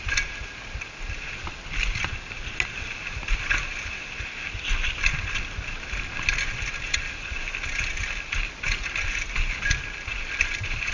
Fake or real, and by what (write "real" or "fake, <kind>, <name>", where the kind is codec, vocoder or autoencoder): real